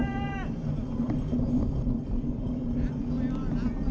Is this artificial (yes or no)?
no